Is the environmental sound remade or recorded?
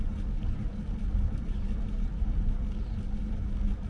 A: recorded